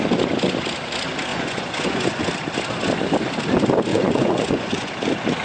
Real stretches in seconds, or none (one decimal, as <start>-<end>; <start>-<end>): 0.0-1.3; 2.2-3.9; 4.9-5.4